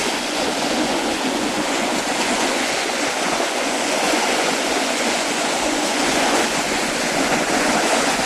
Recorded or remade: remade